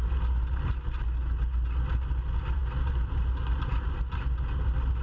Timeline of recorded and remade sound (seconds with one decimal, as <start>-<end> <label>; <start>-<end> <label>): 0.0-5.0 recorded